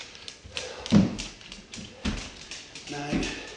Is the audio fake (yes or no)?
no